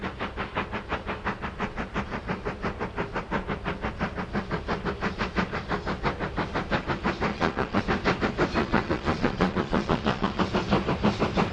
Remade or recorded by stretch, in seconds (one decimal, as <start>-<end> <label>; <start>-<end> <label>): 0.0-7.3 recorded; 7.3-7.8 remade; 7.8-8.6 recorded; 8.6-10.4 remade; 10.4-11.5 recorded